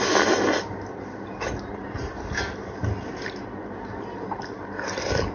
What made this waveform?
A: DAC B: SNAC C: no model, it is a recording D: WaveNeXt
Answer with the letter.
C